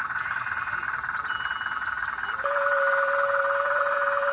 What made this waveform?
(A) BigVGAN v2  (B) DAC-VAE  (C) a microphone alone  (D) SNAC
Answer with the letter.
A